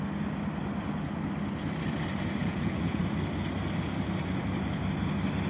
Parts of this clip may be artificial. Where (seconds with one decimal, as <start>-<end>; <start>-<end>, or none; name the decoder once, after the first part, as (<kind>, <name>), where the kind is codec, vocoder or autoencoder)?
2.4-3.0 (vocoder, Vocos)